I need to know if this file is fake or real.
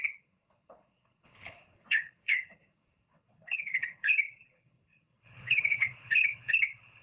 fake